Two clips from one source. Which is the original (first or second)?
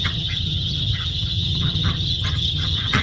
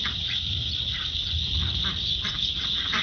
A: second